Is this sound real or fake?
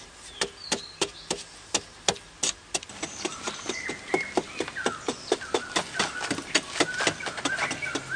real